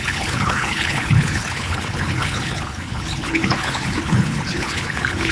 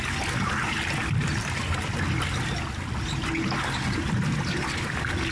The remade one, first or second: first